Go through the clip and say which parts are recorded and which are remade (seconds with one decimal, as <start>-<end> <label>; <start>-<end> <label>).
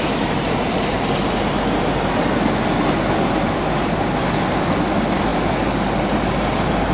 0.0-6.9 recorded